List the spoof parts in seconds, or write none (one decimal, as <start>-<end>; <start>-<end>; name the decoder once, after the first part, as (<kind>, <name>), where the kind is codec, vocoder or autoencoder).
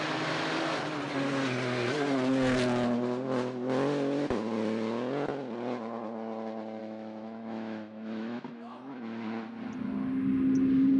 6.8-9.0 (autoencoder, DAC-VAE)